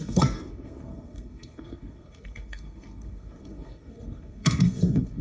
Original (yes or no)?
no